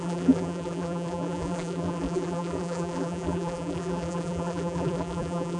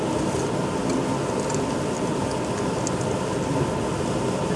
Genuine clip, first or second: second